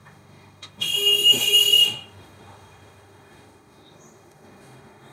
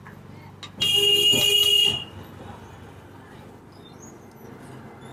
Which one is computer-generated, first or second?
first